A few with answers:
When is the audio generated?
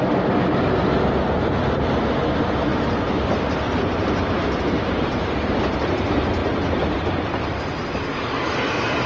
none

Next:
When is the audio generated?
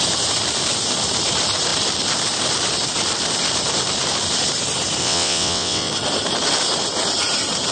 5.0-5.9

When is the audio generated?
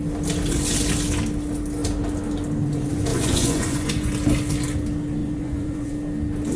3.1-4.1; 5.2-5.9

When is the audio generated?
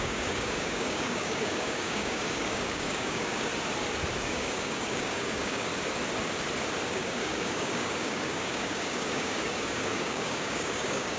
0.0-3.5; 4.2-5.7; 6.9-11.2